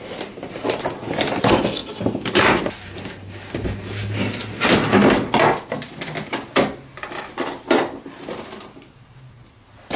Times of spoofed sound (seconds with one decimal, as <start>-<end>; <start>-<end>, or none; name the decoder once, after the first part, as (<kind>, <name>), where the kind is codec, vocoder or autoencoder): none